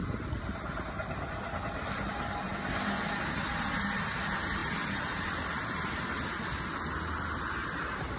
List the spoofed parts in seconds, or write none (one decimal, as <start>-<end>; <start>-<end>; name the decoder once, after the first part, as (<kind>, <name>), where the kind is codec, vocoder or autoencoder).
4.6-6.1 (vocoder, BigVGAN v2); 7.6-8.2